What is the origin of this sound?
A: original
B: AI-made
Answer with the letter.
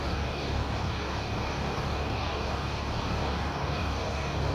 B